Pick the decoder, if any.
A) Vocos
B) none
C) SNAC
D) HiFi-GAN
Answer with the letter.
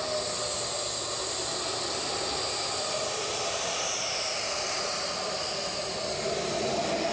B